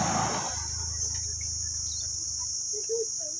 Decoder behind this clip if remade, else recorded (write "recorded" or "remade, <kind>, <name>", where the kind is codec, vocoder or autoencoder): recorded